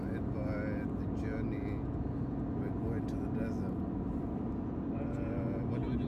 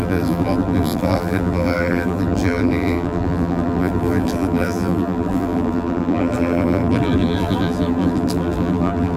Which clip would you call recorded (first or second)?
first